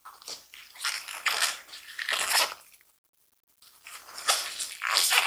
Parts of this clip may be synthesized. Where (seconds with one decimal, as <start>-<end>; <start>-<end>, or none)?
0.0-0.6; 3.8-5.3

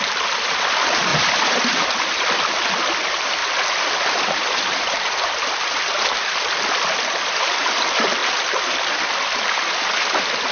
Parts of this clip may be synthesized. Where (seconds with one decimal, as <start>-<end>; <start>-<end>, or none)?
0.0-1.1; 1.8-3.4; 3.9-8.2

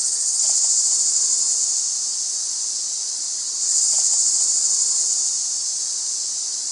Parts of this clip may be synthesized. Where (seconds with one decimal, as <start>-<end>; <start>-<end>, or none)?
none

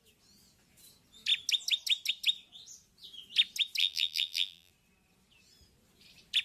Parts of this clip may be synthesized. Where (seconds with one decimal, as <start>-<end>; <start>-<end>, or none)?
3.8-4.7